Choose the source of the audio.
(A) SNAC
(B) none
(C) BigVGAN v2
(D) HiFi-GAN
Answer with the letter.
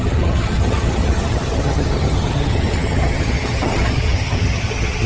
D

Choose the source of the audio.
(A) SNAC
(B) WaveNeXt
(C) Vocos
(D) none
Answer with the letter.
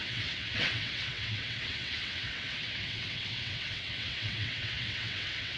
B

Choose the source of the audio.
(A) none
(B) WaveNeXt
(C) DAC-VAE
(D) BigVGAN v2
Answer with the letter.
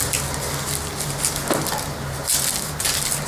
A